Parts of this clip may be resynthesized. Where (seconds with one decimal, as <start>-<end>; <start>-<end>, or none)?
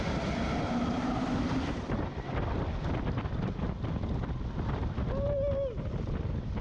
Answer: none